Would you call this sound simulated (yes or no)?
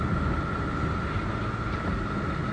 no